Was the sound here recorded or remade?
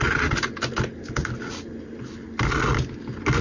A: recorded